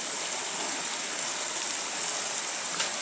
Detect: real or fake real